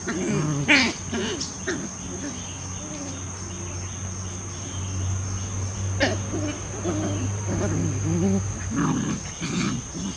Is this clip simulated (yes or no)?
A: no